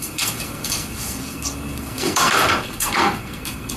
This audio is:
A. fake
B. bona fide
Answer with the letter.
A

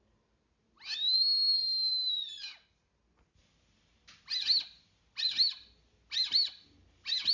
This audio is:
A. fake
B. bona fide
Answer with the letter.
B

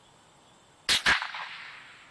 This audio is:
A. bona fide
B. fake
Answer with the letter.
A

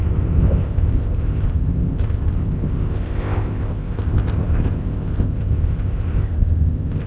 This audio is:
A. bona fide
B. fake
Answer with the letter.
B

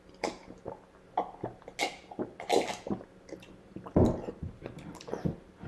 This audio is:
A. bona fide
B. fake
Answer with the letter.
A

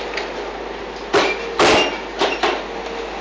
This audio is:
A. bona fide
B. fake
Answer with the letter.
A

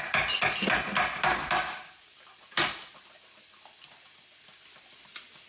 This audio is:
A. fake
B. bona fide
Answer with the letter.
B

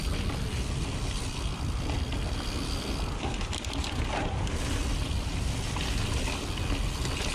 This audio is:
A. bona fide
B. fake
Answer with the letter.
A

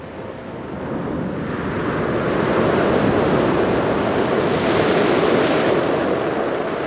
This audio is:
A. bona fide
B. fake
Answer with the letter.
A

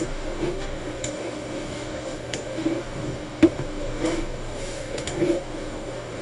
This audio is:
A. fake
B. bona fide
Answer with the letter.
A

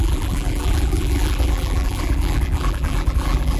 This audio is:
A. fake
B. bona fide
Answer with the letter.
A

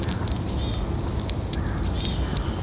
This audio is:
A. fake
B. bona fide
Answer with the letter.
B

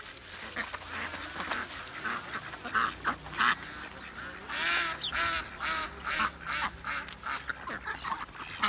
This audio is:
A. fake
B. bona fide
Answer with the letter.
B